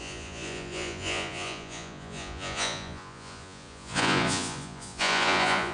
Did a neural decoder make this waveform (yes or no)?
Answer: yes